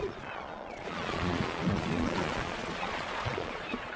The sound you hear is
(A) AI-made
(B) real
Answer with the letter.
A